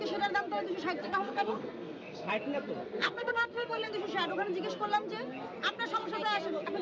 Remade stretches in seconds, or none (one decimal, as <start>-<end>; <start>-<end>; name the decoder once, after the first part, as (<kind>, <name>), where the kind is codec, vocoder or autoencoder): 1.0-2.3 (codec, SNAC); 2.8-3.9